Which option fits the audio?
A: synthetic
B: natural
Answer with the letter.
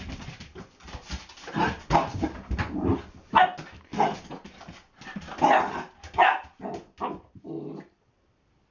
B